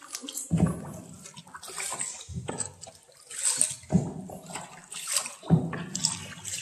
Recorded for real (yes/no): yes